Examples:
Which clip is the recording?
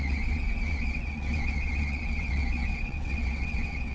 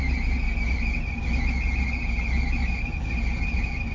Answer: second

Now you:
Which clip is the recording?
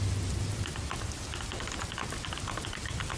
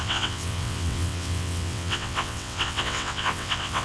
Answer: first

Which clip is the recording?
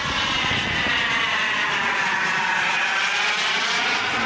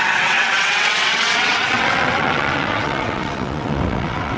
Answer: first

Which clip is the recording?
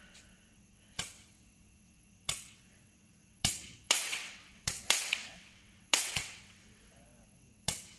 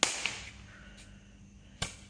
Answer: second